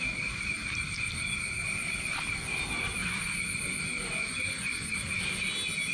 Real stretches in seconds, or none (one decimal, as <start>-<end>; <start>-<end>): 0.0-3.0; 5.1-5.9